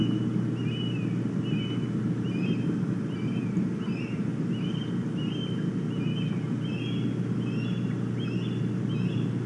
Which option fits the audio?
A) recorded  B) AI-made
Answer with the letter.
A